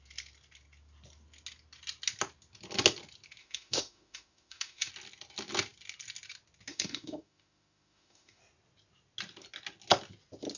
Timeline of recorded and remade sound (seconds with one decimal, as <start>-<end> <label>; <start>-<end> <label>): 0.0-3.4 recorded; 3.4-4.9 remade; 4.9-6.7 recorded; 6.7-8.4 remade; 8.4-10.6 recorded